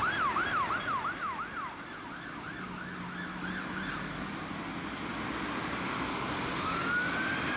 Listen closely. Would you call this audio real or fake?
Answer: real